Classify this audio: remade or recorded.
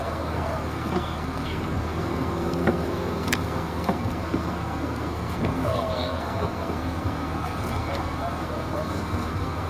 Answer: remade